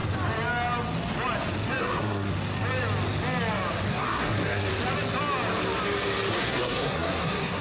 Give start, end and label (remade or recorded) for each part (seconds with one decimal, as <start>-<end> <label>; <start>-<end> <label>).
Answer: 0.0-1.8 recorded; 1.8-2.3 remade; 2.3-3.9 recorded; 3.9-4.7 remade; 4.7-6.3 recorded; 6.3-7.6 remade